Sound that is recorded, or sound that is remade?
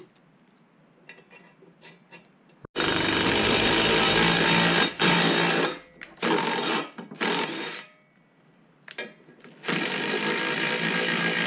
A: recorded